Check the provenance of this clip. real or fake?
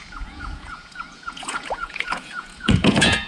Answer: fake